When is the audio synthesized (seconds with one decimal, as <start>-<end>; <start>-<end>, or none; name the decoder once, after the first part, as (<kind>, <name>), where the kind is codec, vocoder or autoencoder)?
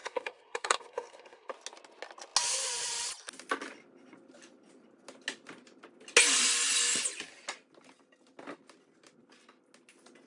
0.0-1.5 (codec, SNAC)